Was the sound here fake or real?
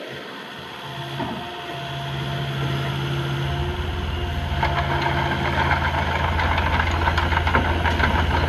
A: real